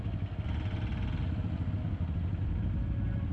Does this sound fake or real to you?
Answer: real